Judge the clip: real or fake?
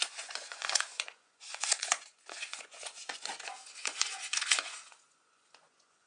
fake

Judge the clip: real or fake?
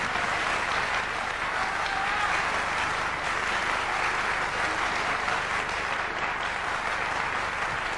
real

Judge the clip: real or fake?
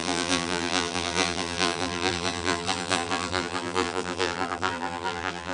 fake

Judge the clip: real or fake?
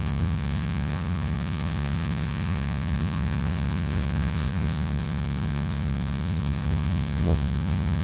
fake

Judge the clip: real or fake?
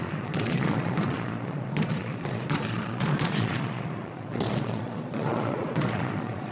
fake